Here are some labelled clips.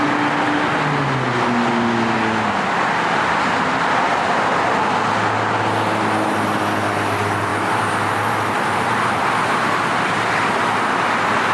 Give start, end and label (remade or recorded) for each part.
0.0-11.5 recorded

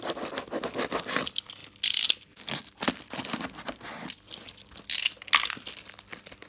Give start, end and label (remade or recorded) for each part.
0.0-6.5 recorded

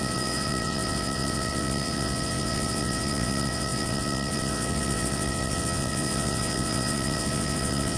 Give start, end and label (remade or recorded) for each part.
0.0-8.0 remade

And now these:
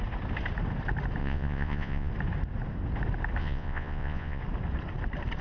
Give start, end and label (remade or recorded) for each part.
0.0-1.2 recorded; 1.2-2.1 remade; 2.1-3.4 recorded; 3.4-4.4 remade; 4.4-5.4 recorded

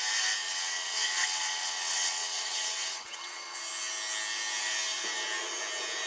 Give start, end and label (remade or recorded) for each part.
0.0-0.4 recorded; 0.4-3.6 remade; 3.6-6.1 recorded

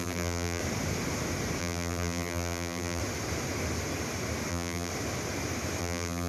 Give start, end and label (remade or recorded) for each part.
0.0-0.6 remade; 0.6-1.6 recorded; 1.6-3.0 remade; 3.0-4.5 recorded; 4.5-4.9 remade; 4.9-5.8 recorded; 5.8-6.3 remade